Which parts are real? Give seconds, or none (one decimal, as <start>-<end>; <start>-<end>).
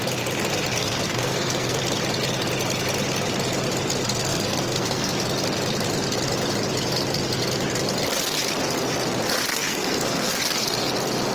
0.0-0.8; 1.8-4.3; 5.1-9.5; 10.3-11.3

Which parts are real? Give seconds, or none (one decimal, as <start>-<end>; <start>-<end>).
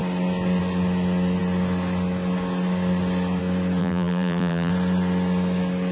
0.0-3.8; 4.7-5.9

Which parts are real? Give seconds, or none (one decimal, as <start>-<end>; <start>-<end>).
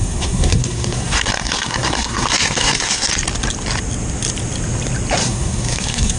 3.1-5.2